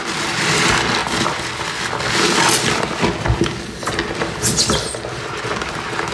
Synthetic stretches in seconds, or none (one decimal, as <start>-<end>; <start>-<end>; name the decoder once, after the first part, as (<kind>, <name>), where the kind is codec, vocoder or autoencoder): none